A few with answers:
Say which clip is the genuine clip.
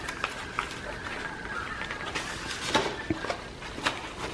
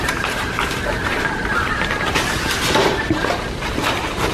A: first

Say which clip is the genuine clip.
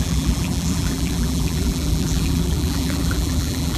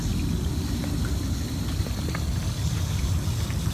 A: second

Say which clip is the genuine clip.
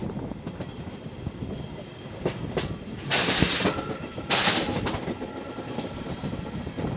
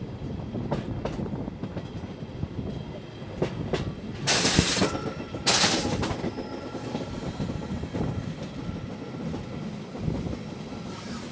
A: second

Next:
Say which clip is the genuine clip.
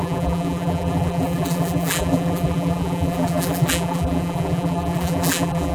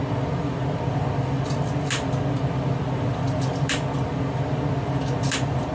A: second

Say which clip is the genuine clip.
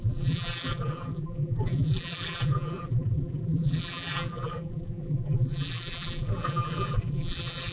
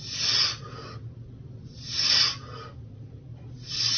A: second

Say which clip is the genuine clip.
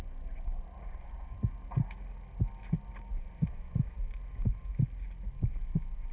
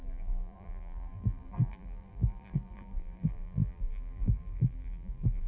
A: first